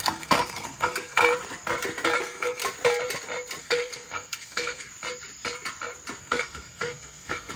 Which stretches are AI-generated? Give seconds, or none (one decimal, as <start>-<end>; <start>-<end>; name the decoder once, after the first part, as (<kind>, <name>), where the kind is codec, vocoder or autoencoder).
0.0-1.2 (codec, SNAC); 2.2-2.6; 3.6-4.9; 6.2-7.6